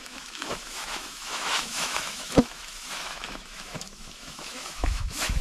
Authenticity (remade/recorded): remade